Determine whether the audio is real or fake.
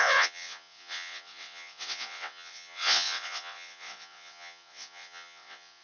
fake